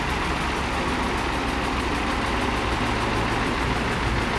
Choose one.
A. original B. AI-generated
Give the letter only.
A